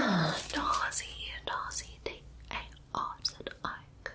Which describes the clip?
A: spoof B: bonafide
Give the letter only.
B